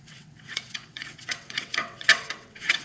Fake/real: fake